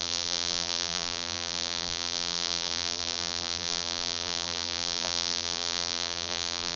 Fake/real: fake